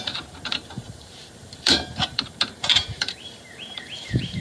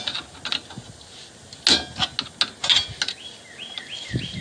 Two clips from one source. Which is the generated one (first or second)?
first